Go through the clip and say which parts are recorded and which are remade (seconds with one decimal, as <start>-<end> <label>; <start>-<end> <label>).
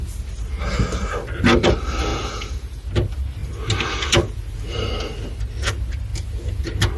0.0-2.1 recorded; 2.1-2.9 remade; 2.9-7.0 recorded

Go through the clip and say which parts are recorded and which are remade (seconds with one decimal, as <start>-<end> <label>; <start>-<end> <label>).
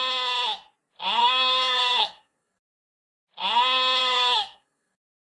0.0-1.2 recorded; 1.2-2.9 remade; 2.9-4.0 recorded; 4.0-5.3 remade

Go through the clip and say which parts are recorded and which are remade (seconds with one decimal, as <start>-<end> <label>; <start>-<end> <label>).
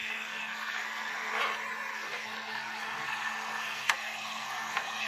0.0-1.4 remade; 1.4-1.9 recorded; 1.9-5.1 remade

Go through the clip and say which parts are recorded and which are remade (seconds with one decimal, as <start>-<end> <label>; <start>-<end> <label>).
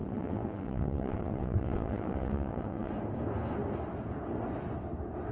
0.0-2.9 remade; 2.9-5.3 recorded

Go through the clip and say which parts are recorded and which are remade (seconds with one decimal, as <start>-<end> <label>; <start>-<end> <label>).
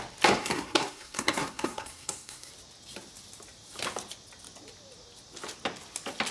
0.0-0.4 recorded; 0.4-2.5 remade; 2.5-6.3 recorded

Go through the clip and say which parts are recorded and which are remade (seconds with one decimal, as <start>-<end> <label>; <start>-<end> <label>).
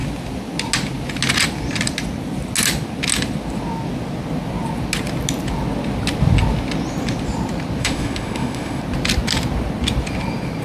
0.0-7.8 recorded; 7.8-8.8 remade; 8.8-10.6 recorded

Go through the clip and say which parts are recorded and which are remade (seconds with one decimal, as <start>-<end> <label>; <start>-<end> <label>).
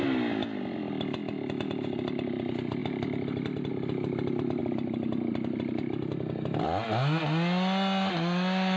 0.0-8.8 recorded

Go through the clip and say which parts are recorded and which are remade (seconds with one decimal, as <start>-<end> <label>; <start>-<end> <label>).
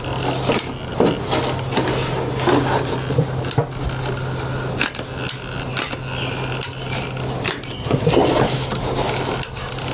0.0-9.9 recorded